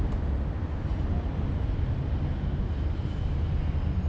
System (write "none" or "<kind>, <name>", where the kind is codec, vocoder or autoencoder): none